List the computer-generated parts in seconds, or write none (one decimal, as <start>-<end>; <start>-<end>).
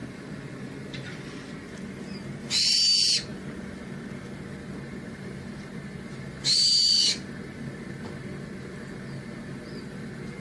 none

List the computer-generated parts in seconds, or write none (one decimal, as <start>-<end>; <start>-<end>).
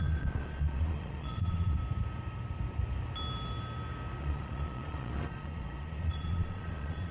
0.0-1.8; 4.2-7.1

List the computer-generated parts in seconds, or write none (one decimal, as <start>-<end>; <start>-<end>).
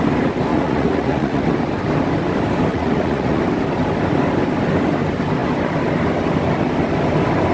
0.5-1.4; 2.7-3.4